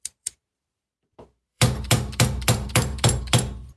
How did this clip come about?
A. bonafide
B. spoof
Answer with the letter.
B